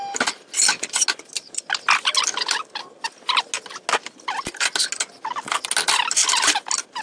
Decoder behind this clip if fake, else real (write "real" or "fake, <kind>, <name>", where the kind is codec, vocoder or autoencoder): real